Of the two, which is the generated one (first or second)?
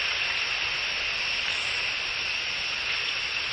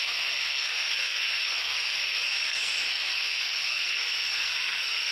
second